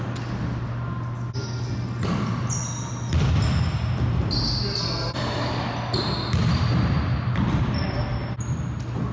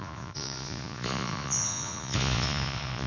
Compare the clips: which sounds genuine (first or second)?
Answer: first